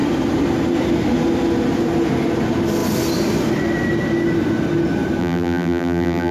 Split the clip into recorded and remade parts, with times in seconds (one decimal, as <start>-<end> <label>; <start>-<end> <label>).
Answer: 0.0-5.2 recorded; 5.2-6.3 remade